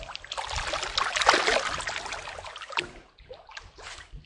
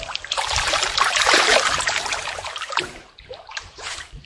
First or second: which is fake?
second